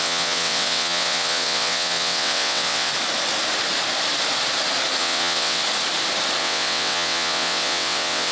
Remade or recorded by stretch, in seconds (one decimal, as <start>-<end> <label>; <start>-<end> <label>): 0.0-2.9 remade; 2.9-5.0 recorded; 5.0-5.6 remade; 5.6-6.4 recorded; 6.4-8.3 remade